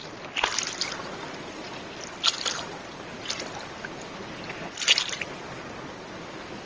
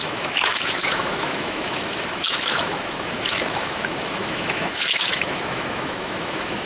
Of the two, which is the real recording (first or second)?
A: first